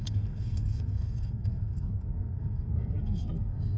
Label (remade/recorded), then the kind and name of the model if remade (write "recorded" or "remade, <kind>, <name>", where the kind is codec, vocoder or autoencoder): remade, codec, SNAC